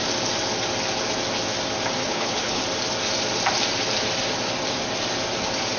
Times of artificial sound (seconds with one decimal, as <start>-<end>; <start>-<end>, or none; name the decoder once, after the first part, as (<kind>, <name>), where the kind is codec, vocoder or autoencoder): 2.0-2.6 (codec, HILCodec)